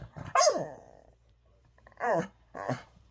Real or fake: fake